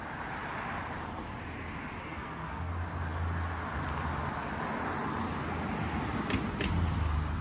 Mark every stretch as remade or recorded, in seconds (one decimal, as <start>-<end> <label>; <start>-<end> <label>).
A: 0.0-2.0 recorded; 2.0-2.7 remade; 2.7-7.4 recorded